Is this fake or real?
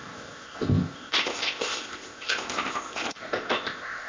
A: fake